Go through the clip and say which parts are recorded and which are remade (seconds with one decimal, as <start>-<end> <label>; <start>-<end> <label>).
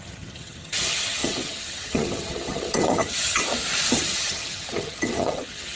0.0-3.4 remade; 3.4-3.9 recorded; 3.9-5.8 remade